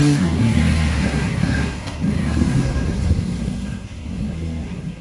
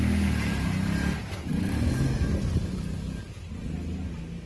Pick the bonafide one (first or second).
second